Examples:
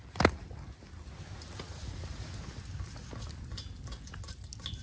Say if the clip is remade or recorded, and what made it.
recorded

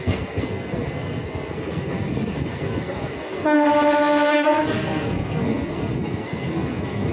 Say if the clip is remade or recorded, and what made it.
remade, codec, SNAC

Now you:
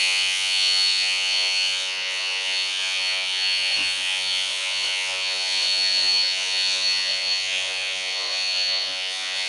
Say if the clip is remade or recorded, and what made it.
remade, vocoder, Vocos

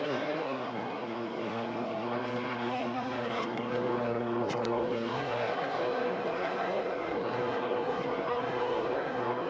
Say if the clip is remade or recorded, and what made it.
remade, codec, SNAC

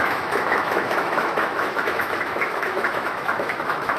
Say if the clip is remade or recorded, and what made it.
remade, autoencoder, DAC-VAE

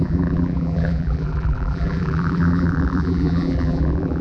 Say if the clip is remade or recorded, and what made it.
remade, vocoder, BigVGAN v2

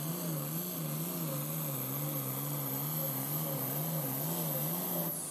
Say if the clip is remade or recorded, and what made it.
recorded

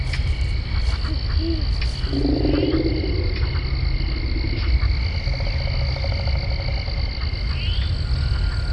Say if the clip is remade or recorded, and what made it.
recorded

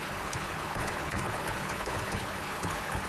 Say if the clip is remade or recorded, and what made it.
remade, codec, HILCodec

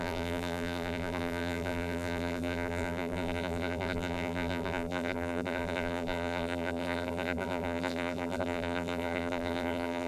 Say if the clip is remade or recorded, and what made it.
remade, vocoder, BigVGAN v2